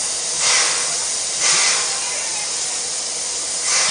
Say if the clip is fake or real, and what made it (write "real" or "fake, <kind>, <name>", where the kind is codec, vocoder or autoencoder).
real